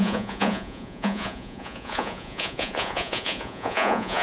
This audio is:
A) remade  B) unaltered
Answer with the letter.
A